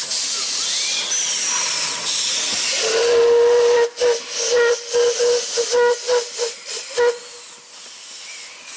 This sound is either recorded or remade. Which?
recorded